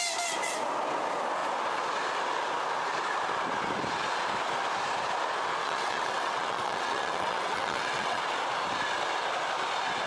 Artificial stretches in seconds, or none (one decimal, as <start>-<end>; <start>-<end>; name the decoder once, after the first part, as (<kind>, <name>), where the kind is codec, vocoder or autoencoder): 5.6-8.2 (vocoder, WaveNeXt)